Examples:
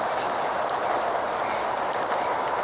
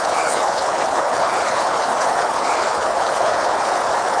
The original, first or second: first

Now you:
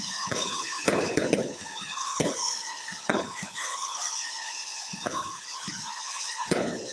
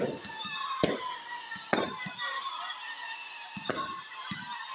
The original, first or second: second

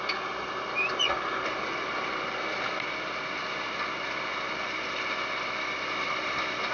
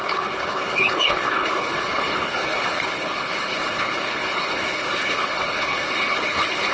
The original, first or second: first